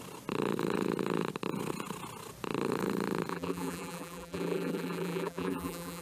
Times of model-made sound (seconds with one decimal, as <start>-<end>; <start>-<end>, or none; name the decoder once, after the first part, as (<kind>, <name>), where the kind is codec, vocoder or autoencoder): 3.3-6.0 (vocoder, BigVGAN v2)